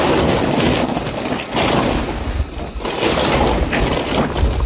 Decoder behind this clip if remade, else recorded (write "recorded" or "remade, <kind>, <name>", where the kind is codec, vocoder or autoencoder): recorded